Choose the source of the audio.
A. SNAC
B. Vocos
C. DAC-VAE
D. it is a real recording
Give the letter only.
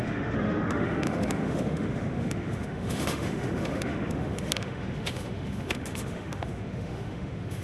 C